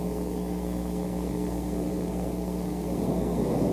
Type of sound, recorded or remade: remade